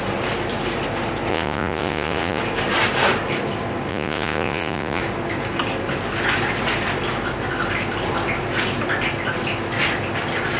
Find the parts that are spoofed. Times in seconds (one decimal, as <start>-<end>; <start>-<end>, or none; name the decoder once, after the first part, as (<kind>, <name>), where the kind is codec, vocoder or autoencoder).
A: 1.3-2.4 (vocoder, Vocos); 3.9-5.0